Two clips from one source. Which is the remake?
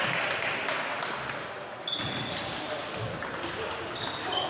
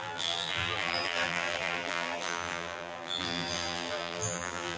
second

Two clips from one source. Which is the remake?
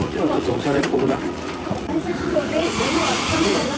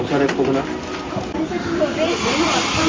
first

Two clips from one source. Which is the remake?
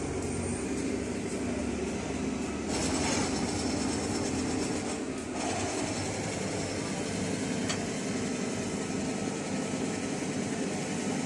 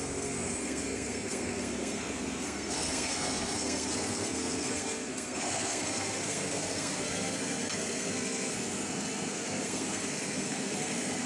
second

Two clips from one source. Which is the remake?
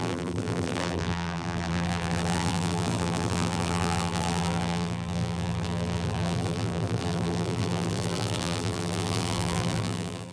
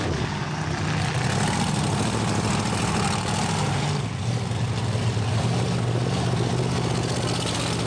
first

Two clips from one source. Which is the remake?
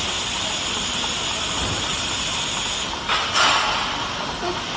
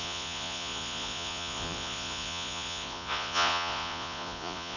second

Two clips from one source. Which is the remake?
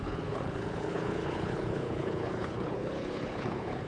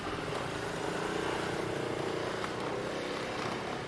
first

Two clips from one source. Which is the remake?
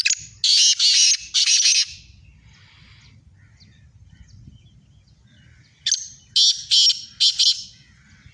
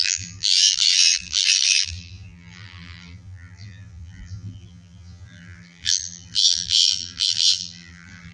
second